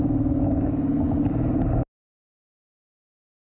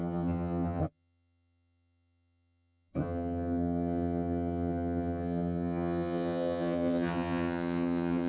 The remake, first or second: second